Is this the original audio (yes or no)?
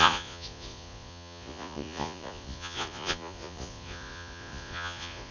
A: no